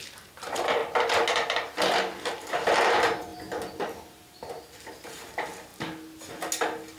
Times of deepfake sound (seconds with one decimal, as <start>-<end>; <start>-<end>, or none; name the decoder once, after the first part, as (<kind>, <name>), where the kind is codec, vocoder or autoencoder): 0.0-0.8 (vocoder, BigVGAN v2); 2.2-3.3; 4.1-5.7